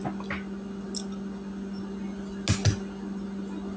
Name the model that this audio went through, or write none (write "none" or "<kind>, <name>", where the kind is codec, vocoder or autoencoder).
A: none